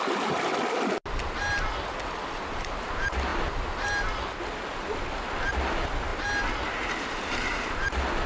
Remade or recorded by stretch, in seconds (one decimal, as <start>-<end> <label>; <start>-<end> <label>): 0.0-8.3 recorded